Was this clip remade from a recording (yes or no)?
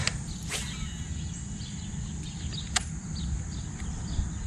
no